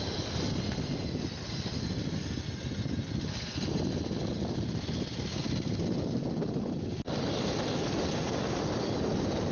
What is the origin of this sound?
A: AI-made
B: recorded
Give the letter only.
B